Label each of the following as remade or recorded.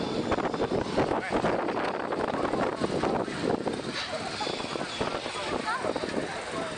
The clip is recorded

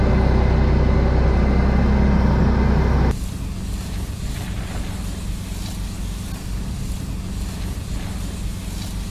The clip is recorded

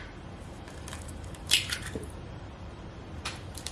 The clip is remade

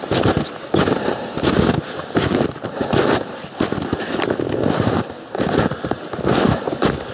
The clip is recorded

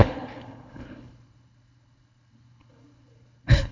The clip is remade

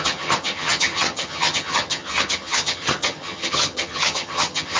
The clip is remade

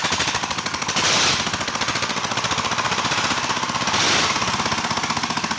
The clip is recorded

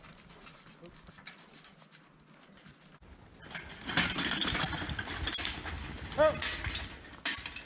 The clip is recorded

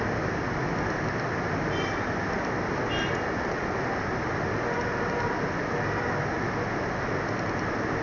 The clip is recorded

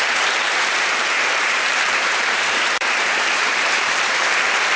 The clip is remade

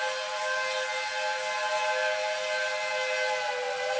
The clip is recorded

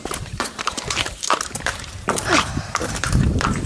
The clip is remade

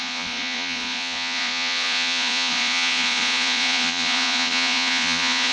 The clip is remade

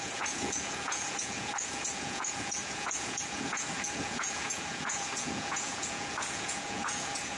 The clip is remade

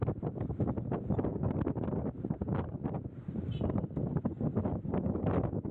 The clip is recorded